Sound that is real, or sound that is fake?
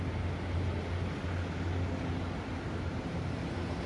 real